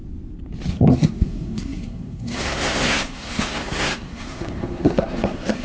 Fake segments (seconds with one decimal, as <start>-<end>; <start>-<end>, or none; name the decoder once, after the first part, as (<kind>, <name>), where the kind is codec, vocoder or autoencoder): 0.7-5.6 (codec, SNAC)